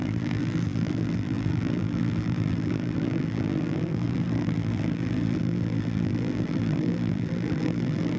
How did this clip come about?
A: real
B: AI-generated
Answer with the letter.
B